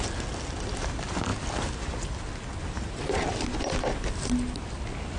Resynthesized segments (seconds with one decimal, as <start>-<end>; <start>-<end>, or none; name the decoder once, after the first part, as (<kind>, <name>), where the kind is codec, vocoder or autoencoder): none